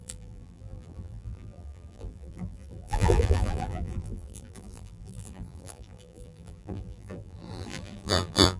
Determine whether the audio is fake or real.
fake